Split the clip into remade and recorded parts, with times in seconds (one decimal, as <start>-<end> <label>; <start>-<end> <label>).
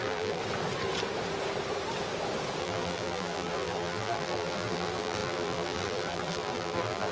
0.0-0.4 remade; 0.4-2.6 recorded; 2.6-7.1 remade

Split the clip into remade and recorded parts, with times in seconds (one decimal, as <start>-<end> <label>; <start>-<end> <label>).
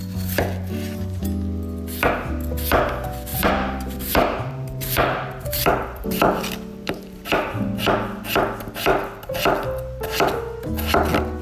0.0-3.3 recorded; 3.3-6.2 remade; 6.2-6.7 recorded; 6.7-7.8 remade; 7.8-11.4 recorded